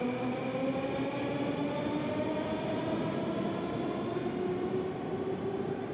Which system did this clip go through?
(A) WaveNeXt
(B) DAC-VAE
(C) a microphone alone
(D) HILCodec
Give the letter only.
C